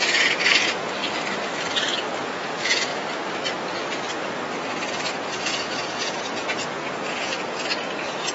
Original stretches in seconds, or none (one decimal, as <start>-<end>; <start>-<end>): 1.0-2.2; 2.9-5.3